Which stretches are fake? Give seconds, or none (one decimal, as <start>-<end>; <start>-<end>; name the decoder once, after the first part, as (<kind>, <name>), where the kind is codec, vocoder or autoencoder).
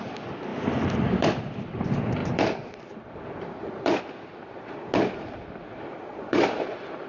0.5-1.3 (vocoder, BigVGAN v2); 2.2-4.0; 6.1-7.1